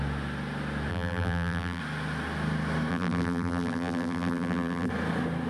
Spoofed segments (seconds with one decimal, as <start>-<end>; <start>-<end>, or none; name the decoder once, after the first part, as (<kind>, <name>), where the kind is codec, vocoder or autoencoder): 0.9-1.8 (vocoder, BigVGAN v2); 2.9-4.9

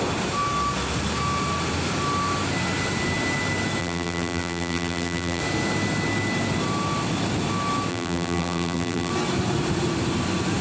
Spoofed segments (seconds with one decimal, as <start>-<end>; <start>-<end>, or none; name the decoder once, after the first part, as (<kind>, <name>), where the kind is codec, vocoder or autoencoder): 3.8-5.4 (vocoder, BigVGAN v2); 7.9-9.1

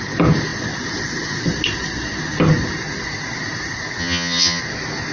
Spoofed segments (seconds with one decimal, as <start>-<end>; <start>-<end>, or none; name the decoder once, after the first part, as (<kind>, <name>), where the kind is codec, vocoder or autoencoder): 4.0-4.6 (vocoder, HiFi-GAN)

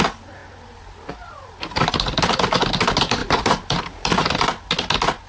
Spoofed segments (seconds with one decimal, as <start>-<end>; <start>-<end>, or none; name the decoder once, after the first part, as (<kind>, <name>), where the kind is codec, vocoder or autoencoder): 0.4-1.9 (vocoder, BigVGAN v2); 3.2-4.4

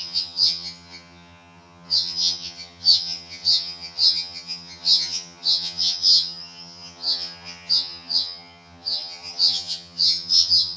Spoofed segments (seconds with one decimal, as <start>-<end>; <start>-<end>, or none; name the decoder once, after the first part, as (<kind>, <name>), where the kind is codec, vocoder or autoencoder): 0.0-10.8 (vocoder, HiFi-GAN)